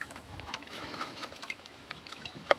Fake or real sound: fake